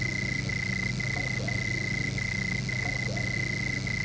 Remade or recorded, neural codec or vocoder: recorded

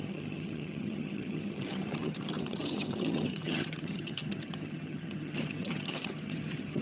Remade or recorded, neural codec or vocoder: remade, vocoder, HiFi-GAN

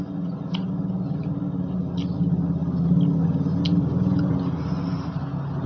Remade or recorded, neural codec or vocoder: recorded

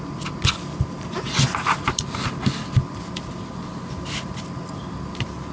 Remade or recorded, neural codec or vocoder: recorded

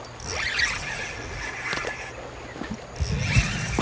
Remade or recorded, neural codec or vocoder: recorded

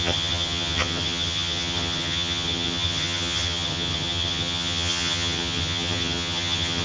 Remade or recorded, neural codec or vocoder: remade, vocoder, HiFi-GAN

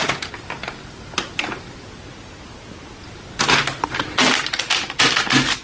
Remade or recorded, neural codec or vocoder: recorded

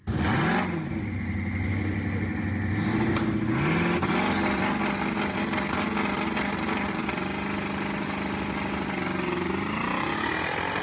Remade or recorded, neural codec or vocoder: recorded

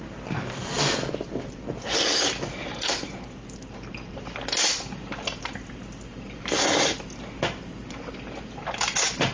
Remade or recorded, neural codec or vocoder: recorded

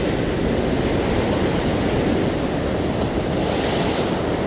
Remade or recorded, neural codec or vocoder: recorded